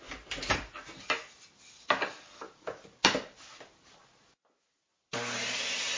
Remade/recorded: recorded